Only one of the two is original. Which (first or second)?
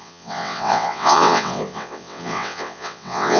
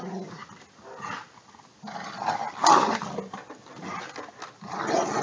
second